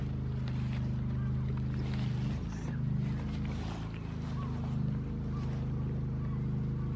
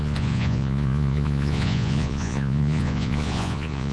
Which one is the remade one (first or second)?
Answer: second